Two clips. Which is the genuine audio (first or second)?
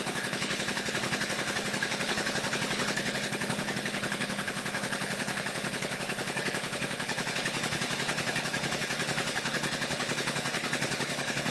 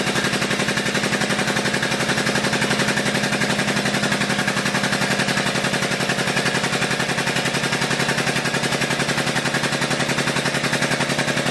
second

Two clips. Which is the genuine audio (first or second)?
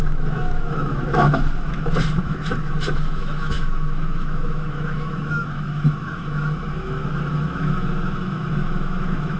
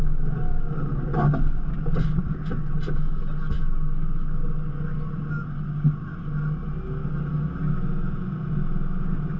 second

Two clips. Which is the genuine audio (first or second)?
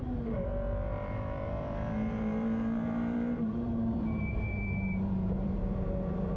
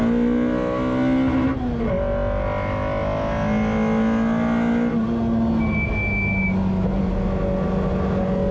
second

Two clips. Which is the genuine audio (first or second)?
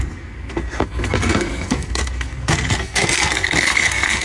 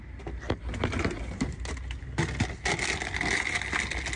second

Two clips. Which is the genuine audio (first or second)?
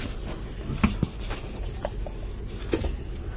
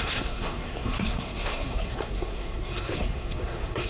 first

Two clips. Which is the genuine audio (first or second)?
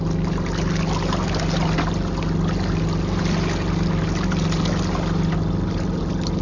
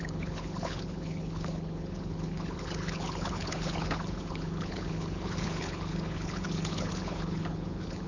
first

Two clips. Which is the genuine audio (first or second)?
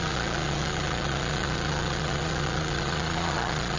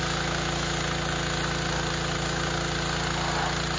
second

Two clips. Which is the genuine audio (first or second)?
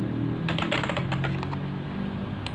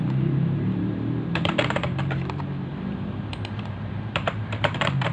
first